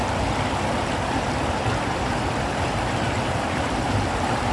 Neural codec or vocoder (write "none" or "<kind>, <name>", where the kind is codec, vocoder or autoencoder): vocoder, BigVGAN v2